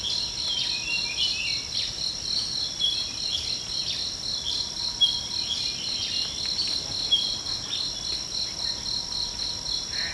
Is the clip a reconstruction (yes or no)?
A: no